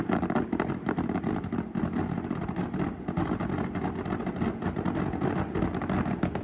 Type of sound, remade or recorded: recorded